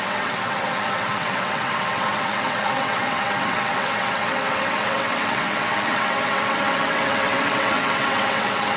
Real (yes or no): no